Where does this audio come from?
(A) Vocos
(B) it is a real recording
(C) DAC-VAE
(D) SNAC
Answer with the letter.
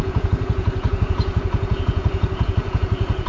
A